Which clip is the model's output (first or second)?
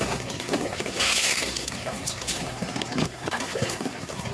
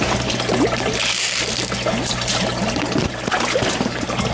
first